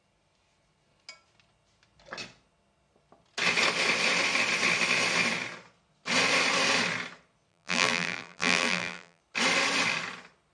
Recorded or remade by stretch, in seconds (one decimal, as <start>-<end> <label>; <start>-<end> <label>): 0.0-7.5 recorded; 7.5-9.2 remade; 9.2-10.5 recorded